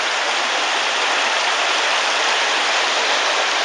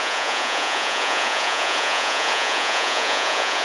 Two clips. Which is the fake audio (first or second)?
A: second